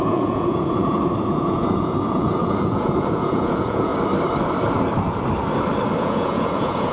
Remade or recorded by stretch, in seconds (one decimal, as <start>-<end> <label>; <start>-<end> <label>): 0.0-3.9 remade; 3.9-6.0 recorded; 6.0-6.9 remade